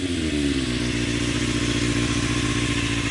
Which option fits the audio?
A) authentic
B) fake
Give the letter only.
A